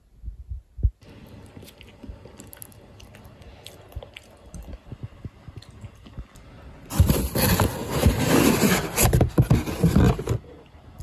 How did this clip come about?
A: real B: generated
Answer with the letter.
A